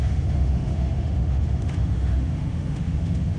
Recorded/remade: remade